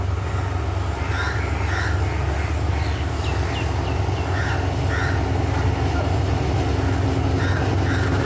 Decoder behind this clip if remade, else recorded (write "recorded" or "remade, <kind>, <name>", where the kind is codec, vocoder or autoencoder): recorded